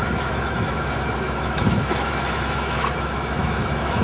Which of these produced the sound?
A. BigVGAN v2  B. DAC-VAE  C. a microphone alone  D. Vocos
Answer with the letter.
B